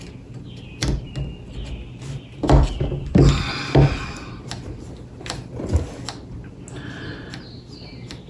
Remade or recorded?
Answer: recorded